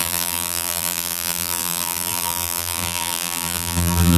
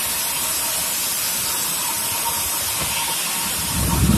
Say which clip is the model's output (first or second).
first